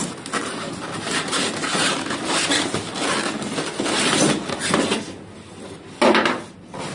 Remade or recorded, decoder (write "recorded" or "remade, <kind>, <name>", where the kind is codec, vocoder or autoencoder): recorded